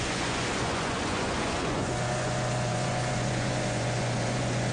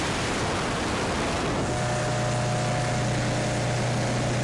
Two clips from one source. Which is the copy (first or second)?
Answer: first